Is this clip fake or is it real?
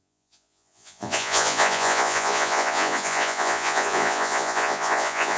fake